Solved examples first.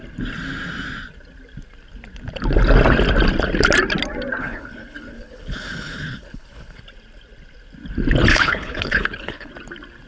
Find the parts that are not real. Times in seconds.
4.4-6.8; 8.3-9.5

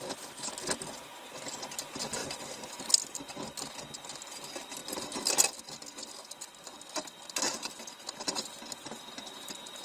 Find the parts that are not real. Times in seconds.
none

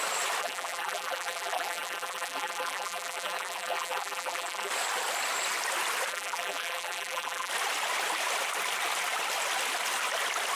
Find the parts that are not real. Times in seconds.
0.4-4.7; 6.1-7.5